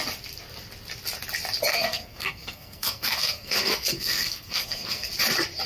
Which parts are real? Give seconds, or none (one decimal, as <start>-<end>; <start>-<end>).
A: 0.0-1.7; 5.1-5.7